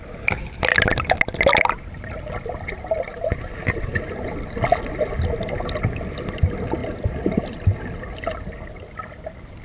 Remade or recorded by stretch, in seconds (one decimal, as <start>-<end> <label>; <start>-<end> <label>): 0.0-0.7 remade; 0.7-2.9 recorded; 2.9-3.9 remade; 3.9-5.3 recorded; 5.3-6.8 remade; 6.8-8.8 recorded; 8.8-9.6 remade